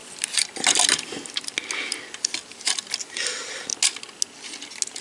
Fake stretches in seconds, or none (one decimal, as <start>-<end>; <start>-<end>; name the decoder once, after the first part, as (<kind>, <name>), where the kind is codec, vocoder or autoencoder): 3.0-3.7 (vocoder, BigVGAN v2)

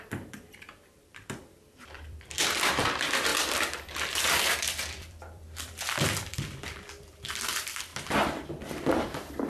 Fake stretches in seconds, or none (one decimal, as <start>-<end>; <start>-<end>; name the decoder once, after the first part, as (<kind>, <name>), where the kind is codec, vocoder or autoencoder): 0.0-7.9 (vocoder, BigVGAN v2); 8.5-9.5

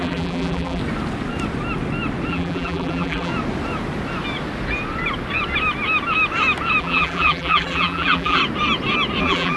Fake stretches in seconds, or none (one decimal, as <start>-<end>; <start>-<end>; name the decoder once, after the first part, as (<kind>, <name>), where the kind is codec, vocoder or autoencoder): 0.0-0.8 (vocoder, BigVGAN v2); 2.3-3.3; 6.8-8.4; 9.2-9.6

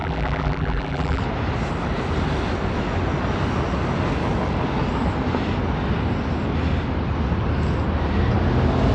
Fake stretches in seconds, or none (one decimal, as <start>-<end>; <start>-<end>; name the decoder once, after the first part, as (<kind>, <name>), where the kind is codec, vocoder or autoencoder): 0.0-1.2 (vocoder, BigVGAN v2)